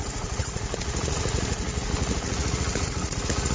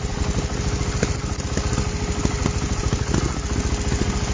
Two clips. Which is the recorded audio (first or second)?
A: second